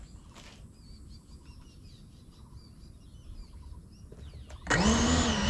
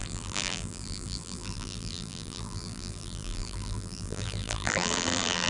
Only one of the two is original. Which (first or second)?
first